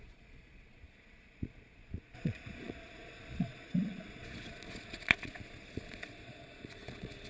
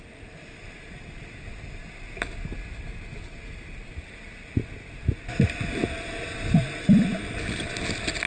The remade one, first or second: first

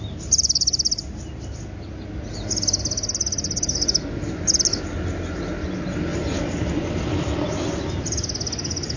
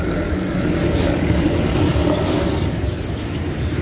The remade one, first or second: second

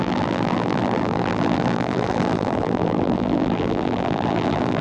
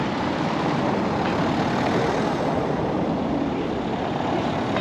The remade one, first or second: first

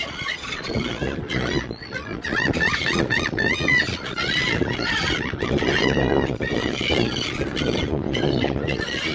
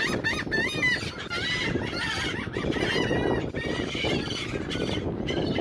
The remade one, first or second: first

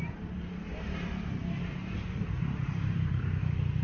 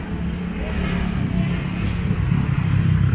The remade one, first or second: first